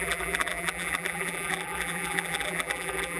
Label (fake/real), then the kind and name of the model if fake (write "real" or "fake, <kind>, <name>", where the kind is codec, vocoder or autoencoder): fake, vocoder, BigVGAN v2